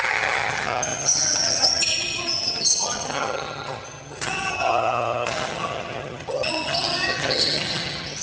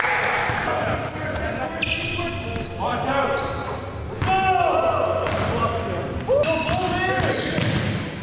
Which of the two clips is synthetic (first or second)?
first